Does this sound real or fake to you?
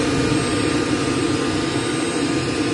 real